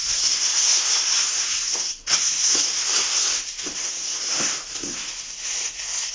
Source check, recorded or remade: remade